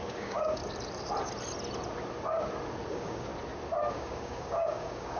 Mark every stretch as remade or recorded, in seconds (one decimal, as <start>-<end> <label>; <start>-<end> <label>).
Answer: 0.0-0.6 remade; 0.6-2.9 recorded; 2.9-3.3 remade; 3.3-3.9 recorded; 3.9-5.2 remade